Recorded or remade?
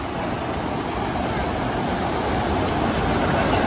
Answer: recorded